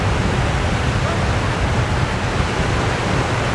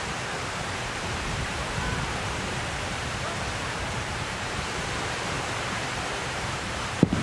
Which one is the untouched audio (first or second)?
first